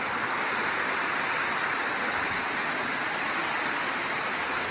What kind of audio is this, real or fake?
fake